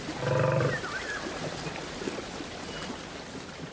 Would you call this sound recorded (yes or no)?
no